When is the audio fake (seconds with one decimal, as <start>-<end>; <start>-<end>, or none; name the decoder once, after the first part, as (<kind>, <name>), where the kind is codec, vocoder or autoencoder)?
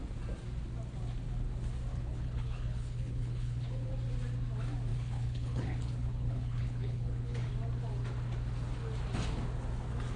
1.9-3.9 (codec, HILCodec); 4.9-7.5